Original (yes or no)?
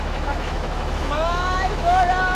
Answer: no